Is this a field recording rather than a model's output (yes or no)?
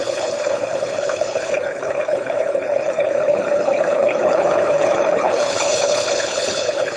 no